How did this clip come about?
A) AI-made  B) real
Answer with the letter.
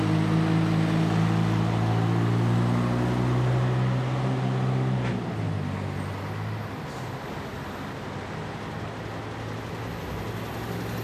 B